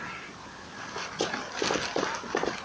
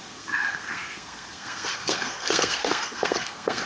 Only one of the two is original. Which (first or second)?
first